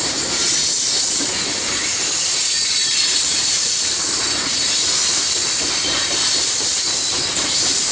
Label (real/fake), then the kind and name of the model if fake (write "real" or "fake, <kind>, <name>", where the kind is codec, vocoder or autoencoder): fake, vocoder, BigVGAN v2